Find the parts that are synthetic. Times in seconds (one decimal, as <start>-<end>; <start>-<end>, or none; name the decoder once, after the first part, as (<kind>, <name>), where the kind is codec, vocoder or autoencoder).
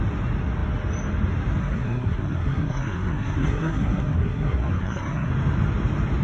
1.6-5.3 (codec, SNAC)